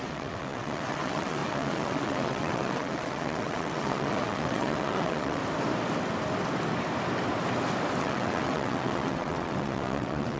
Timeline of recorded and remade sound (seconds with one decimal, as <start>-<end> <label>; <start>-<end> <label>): 0.0-5.4 remade; 5.4-8.0 recorded; 8.0-10.4 remade